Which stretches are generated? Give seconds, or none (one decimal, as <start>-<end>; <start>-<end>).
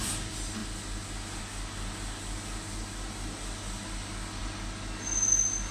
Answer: none